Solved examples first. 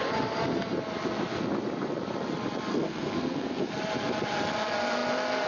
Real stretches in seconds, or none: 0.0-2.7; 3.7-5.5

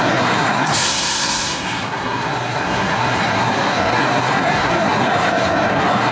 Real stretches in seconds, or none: none